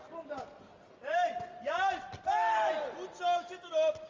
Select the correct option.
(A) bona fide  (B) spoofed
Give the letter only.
A